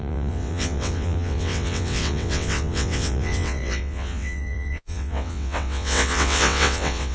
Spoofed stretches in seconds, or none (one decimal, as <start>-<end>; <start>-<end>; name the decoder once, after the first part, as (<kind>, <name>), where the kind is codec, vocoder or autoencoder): 0.0-7.1 (vocoder, WaveNeXt)